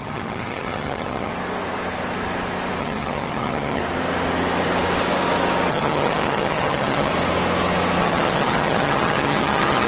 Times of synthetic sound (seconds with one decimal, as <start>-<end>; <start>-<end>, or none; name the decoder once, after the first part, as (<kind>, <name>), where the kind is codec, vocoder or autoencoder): 0.0-1.3 (vocoder, HiFi-GAN); 2.8-3.8; 5.7-7.1; 8.0-9.9